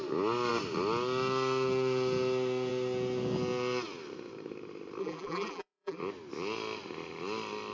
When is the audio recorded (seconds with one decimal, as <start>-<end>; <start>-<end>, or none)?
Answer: 0.0-5.0; 6.0-7.7